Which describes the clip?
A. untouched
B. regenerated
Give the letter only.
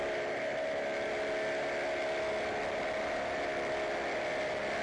A